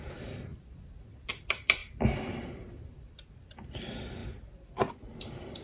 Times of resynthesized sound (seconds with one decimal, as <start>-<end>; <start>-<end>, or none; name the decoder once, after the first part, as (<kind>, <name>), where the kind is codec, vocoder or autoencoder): 0.0-5.6 (vocoder, BigVGAN v2)